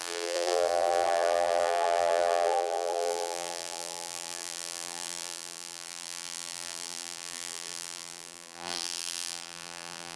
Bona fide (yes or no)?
no